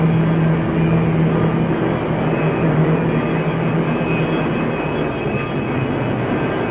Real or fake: real